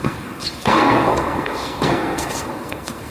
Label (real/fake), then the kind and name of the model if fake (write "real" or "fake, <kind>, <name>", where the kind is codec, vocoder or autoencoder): fake, codec, SNAC